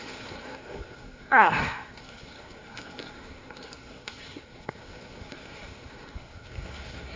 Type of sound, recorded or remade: remade